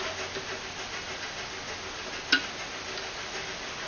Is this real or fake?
real